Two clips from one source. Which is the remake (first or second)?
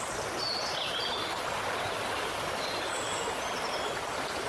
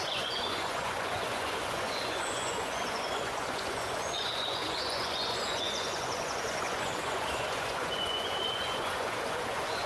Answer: second